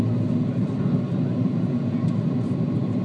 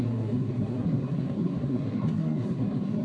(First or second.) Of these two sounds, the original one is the first